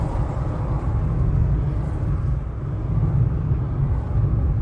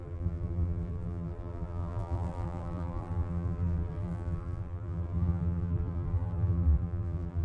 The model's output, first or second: second